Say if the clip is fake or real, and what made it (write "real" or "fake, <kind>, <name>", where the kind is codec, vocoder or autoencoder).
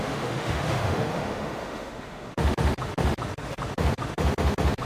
fake, autoencoder, DAC-VAE